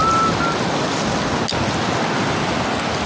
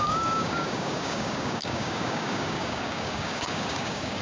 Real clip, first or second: first